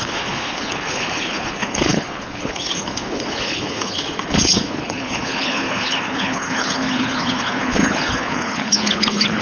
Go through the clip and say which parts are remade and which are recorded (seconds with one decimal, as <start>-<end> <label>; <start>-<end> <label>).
0.0-9.4 remade